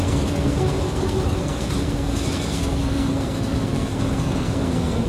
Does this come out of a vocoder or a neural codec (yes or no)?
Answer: yes